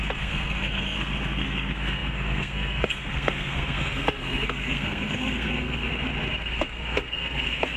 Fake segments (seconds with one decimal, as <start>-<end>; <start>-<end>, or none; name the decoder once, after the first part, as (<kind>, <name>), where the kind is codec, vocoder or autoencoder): 0.0-5.9 (codec, SNAC); 6.4-7.8